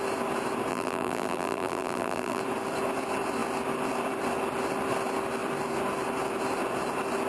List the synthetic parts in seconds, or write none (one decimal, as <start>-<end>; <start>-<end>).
0.7-2.4